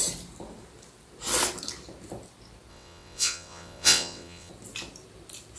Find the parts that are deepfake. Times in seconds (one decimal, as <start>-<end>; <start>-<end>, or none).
2.7-4.5